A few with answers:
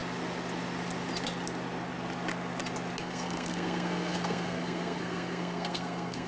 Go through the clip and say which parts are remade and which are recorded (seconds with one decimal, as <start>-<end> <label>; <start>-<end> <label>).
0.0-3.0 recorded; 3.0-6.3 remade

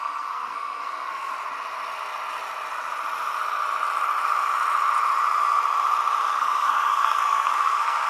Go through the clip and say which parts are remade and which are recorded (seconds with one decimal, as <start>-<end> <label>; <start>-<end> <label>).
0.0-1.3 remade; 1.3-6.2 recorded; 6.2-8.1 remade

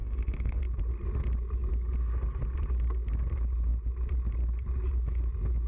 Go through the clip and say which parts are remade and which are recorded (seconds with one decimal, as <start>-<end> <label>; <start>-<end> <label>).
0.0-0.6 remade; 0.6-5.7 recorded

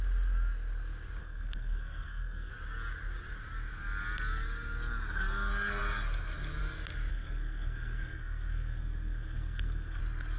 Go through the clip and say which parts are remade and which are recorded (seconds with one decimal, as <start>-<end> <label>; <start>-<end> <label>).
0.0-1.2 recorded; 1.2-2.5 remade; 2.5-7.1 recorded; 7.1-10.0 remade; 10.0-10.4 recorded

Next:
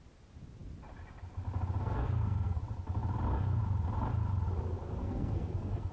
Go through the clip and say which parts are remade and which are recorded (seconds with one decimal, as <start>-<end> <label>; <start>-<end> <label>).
0.0-1.8 recorded; 1.8-2.6 remade; 2.6-5.0 recorded; 5.0-5.9 remade

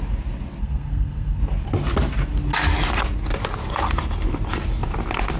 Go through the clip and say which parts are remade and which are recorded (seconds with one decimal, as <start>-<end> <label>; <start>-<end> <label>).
0.0-0.6 recorded; 0.6-1.4 remade; 1.4-5.4 recorded

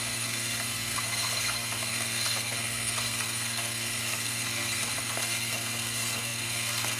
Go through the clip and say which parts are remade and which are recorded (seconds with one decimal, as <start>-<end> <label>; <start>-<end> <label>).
0.0-7.0 remade

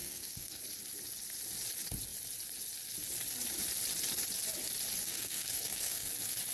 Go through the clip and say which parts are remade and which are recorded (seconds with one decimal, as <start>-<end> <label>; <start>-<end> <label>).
0.0-0.6 remade; 0.6-5.0 recorded; 5.0-6.1 remade; 6.1-6.5 recorded